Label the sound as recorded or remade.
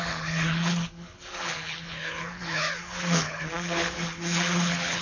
remade